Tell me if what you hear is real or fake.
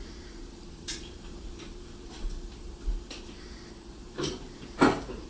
fake